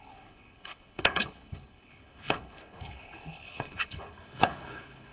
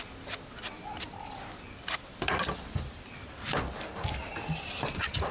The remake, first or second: first